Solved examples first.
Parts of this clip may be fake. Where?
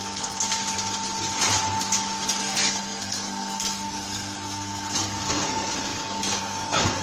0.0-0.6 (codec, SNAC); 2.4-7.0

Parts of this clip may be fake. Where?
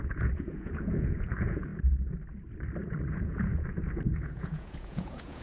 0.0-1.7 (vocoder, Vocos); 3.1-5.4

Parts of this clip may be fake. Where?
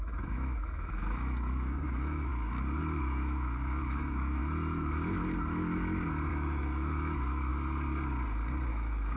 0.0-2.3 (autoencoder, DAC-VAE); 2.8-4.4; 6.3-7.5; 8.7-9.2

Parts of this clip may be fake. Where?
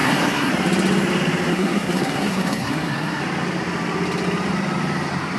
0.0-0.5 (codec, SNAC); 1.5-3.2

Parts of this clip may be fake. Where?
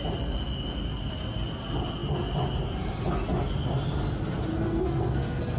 4.5-5.6 (codec, SNAC)